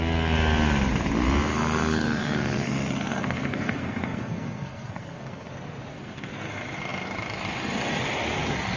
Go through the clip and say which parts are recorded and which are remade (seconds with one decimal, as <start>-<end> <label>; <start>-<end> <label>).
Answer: 0.0-1.5 recorded; 1.5-5.5 remade; 5.5-5.9 recorded; 5.9-6.5 remade; 6.5-8.8 recorded